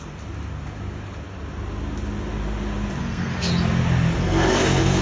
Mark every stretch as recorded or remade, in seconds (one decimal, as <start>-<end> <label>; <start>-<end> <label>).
0.0-3.0 recorded; 3.0-3.5 remade; 3.5-4.2 recorded; 4.2-5.0 remade